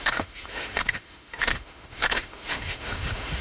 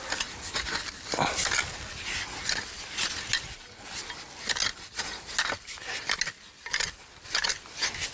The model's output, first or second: first